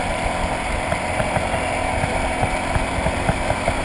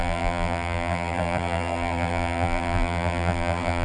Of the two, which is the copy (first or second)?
second